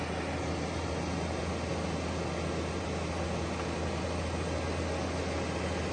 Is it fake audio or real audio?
real